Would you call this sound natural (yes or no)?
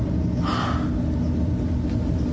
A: yes